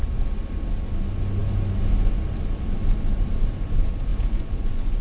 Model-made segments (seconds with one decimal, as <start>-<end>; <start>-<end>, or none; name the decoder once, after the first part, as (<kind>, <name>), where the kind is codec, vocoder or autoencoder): 4.1-5.0 (vocoder, Vocos)